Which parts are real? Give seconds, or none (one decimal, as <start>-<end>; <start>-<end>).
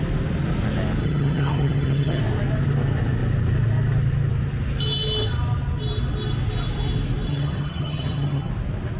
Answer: 0.0-1.0; 2.2-7.3; 8.5-9.0